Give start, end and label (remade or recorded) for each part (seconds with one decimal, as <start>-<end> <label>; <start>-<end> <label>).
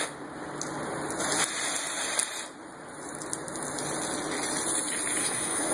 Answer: 0.0-5.2 recorded; 5.2-5.7 remade